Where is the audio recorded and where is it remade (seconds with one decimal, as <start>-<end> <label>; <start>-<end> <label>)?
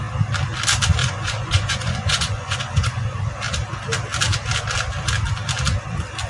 0.0-1.0 recorded; 1.0-3.2 remade; 3.2-6.3 recorded